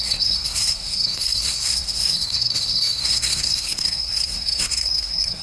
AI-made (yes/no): yes